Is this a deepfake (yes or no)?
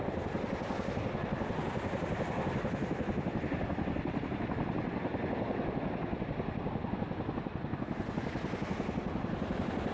no